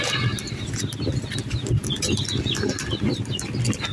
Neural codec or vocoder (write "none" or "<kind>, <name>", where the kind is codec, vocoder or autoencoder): none